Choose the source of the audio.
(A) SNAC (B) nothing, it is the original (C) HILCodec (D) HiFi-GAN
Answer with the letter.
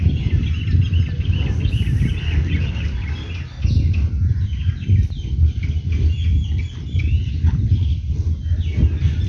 B